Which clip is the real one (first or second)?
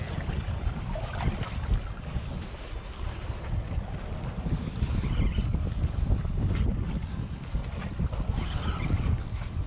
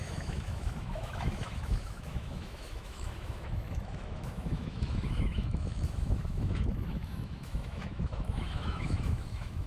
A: first